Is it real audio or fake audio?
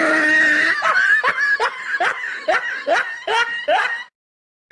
real